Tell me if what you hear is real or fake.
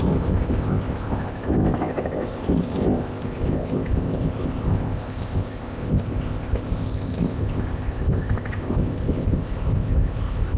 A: fake